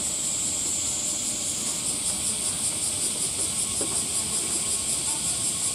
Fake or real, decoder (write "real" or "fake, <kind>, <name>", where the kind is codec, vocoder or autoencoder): real